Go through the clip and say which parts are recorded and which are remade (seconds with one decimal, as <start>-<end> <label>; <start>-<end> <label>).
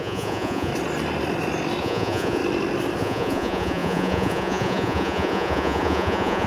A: 0.0-0.7 remade; 0.7-1.8 recorded; 1.8-2.4 remade; 2.4-3.0 recorded; 3.0-6.5 remade